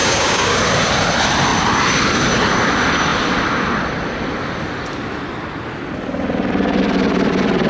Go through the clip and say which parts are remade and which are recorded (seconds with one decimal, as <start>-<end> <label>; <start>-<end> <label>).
0.0-0.6 remade; 0.6-7.7 recorded

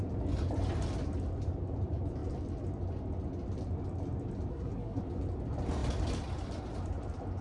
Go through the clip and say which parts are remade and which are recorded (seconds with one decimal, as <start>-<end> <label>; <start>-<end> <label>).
0.0-4.5 recorded; 4.5-5.0 remade; 5.0-7.4 recorded

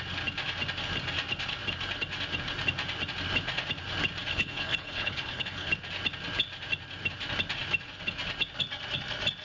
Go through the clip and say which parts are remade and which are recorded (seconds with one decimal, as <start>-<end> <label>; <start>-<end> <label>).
0.0-4.3 recorded; 4.3-5.7 remade; 5.7-9.4 recorded

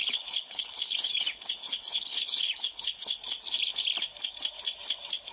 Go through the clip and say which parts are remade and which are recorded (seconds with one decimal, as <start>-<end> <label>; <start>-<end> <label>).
0.0-3.2 remade; 3.2-5.3 recorded